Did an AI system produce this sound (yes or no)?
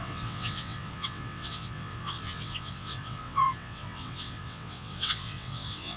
yes